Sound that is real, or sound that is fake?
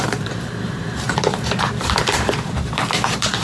fake